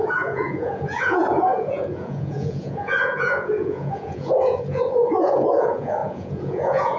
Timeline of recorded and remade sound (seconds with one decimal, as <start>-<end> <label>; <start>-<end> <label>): 0.0-7.0 remade